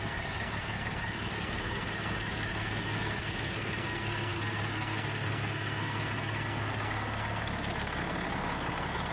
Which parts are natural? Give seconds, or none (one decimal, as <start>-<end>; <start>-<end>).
none